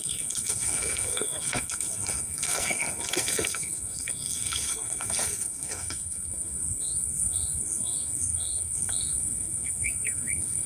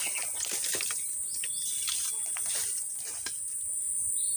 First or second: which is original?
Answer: second